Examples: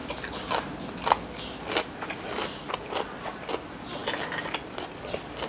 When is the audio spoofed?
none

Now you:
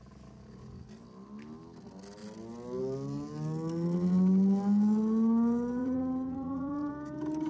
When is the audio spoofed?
5.8-6.9 (vocoder, Vocos)

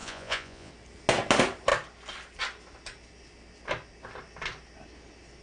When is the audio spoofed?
0.0-0.7 (vocoder, Vocos)

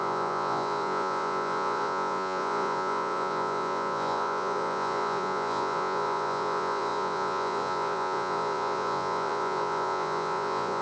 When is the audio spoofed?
0.0-10.8 (vocoder, Vocos)

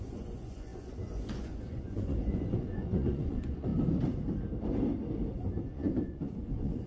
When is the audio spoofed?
0.0-3.7 (vocoder, Vocos); 5.6-6.9